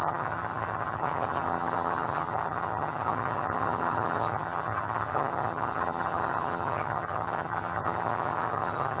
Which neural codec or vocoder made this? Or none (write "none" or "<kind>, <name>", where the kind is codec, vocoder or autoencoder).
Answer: vocoder, HiFi-GAN